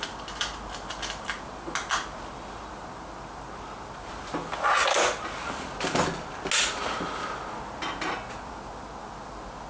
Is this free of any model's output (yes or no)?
yes